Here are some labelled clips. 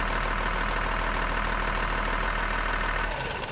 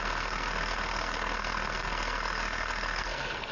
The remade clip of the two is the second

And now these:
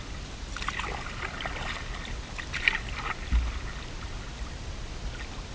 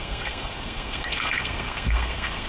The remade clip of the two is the second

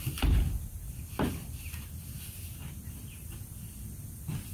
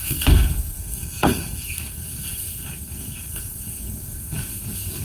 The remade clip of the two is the second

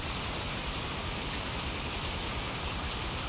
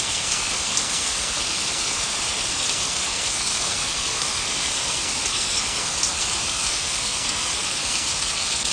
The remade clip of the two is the second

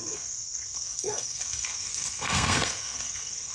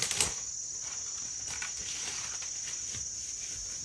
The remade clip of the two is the first